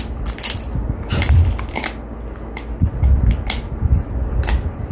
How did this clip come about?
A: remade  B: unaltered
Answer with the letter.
B